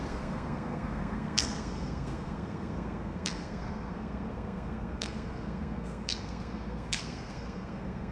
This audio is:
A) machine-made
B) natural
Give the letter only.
A